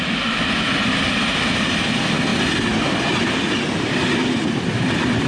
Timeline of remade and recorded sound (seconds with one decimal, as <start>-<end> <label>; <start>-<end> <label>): 0.0-5.3 recorded